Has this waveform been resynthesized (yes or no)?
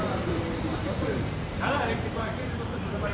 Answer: yes